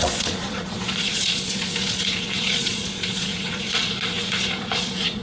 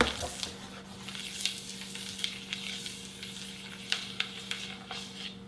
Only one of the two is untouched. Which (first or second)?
second